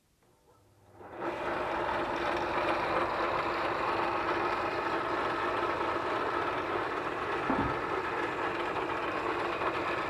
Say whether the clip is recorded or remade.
recorded